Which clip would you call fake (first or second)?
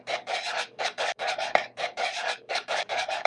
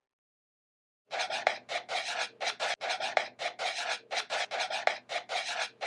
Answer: first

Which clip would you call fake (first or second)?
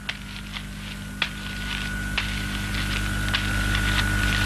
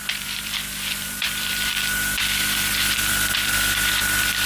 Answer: second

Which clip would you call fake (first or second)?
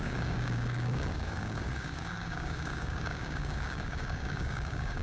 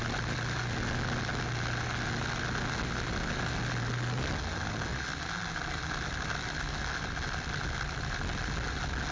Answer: first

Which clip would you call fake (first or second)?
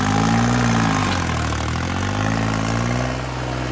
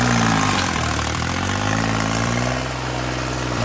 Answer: second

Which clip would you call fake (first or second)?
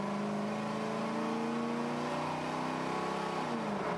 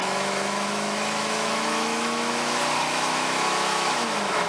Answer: second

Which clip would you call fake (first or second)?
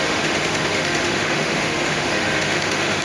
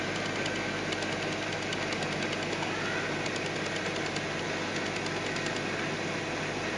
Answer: first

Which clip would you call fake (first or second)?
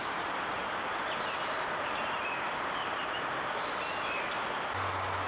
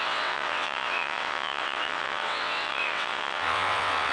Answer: second